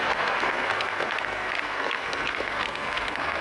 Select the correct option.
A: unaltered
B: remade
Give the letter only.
B